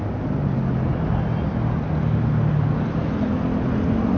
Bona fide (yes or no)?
yes